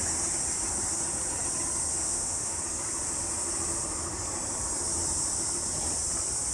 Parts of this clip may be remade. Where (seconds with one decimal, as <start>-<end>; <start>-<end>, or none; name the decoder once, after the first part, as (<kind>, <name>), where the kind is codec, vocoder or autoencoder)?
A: 1.9-2.6 (autoencoder, DAC-VAE)